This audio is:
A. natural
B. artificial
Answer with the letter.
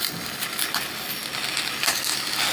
A